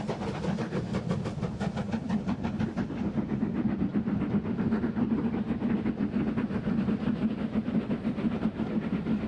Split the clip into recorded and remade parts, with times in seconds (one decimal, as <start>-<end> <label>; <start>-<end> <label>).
0.0-9.3 recorded